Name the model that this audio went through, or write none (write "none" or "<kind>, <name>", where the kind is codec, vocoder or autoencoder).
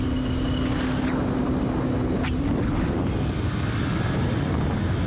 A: none